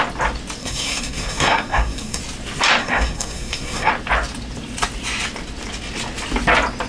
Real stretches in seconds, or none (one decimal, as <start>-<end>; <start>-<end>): 0.0-0.6; 2.2-2.8; 3.9-6.9